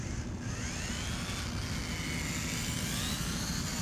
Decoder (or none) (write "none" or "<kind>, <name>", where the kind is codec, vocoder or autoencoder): none